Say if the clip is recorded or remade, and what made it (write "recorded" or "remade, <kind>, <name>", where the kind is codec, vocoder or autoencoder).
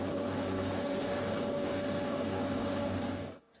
remade, codec, DAC